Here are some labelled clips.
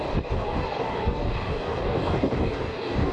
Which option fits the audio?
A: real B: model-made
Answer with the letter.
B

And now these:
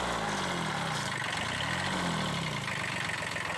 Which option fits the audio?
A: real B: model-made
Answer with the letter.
A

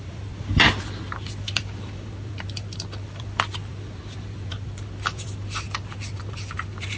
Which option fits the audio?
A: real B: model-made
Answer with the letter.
B